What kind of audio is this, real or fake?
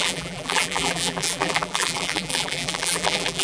fake